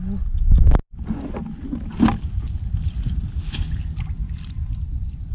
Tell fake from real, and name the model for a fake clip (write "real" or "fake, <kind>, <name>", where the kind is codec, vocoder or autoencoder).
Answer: real